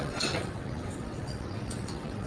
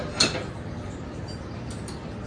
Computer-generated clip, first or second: first